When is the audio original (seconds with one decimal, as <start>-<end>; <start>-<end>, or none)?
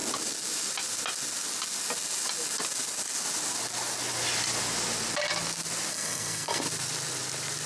0.0-5.9; 6.6-7.7